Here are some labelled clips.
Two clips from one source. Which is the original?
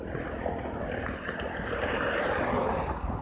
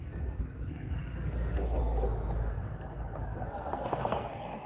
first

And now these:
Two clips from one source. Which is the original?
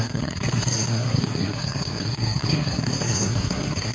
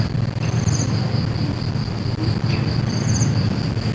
second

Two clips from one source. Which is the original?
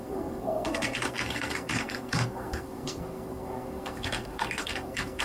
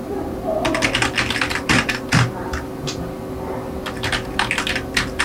second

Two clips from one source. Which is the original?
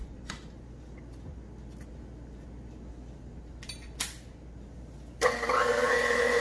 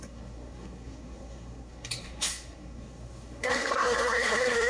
first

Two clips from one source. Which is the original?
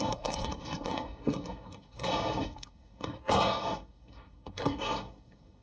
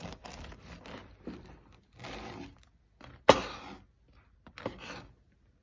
second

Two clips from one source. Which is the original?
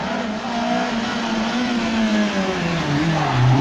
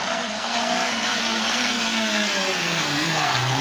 first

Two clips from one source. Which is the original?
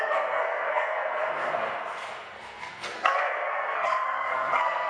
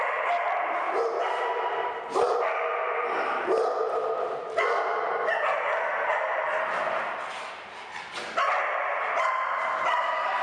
second